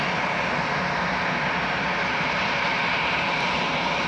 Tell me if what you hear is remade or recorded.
recorded